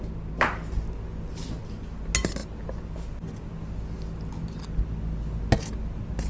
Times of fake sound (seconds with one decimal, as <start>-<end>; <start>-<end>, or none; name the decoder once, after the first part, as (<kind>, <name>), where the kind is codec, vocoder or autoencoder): none